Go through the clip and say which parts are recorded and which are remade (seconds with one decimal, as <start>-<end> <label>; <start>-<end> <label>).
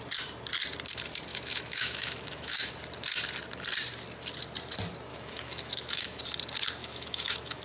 0.0-1.3 recorded; 1.3-2.7 remade; 2.7-5.1 recorded; 5.1-6.2 remade; 6.2-6.8 recorded; 6.8-7.6 remade